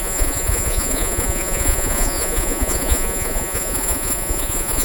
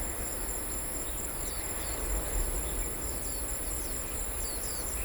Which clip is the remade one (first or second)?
first